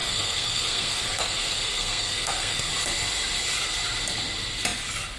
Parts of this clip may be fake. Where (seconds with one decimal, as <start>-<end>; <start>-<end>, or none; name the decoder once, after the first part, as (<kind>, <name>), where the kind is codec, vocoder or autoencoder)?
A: 0.0-2.7 (codec, SNAC)